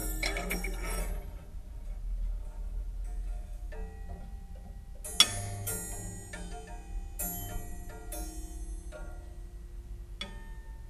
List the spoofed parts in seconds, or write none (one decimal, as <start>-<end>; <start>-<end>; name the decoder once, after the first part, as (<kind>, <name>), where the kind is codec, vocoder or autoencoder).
0.0-1.0 (codec, SNAC)